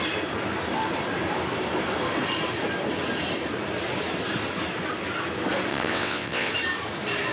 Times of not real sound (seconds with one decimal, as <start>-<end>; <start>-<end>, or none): 5.7-6.5